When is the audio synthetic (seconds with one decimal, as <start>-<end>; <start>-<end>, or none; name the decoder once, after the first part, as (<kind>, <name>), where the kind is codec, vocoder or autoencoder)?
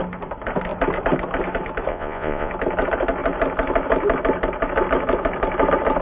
1.9-2.5 (vocoder, Vocos)